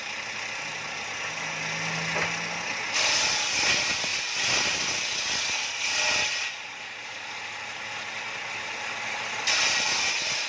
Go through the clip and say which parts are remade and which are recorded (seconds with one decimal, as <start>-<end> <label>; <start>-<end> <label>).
0.0-10.5 recorded